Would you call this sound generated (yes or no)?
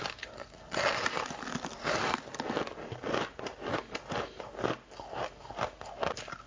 no